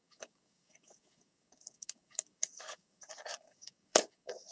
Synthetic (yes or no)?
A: yes